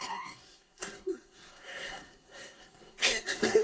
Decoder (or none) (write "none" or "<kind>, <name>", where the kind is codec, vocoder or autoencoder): codec, SNAC